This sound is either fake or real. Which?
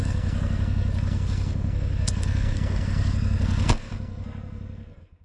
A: fake